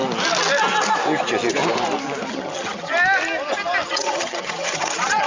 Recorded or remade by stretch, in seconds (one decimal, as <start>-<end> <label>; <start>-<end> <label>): 0.0-2.3 recorded; 2.3-2.9 remade; 2.9-3.9 recorded; 3.9-5.3 remade